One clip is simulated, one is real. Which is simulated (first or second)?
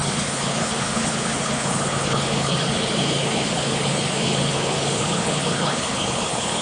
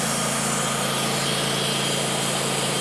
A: first